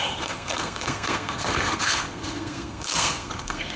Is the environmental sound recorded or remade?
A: remade